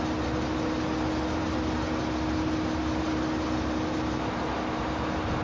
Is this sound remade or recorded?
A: recorded